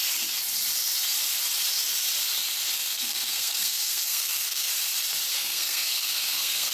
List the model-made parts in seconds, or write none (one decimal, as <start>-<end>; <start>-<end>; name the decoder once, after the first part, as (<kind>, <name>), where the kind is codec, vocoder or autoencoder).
2.7-4.7 (codec, SNAC); 5.3-6.7